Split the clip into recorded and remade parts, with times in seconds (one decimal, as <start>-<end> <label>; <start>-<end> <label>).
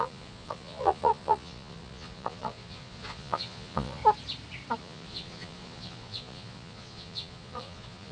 0.0-4.0 remade; 4.0-4.8 recorded; 4.8-8.1 remade